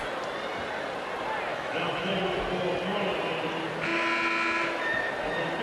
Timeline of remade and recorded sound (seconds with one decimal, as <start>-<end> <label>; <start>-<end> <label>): 0.0-1.5 recorded; 1.5-2.1 remade; 2.1-5.6 recorded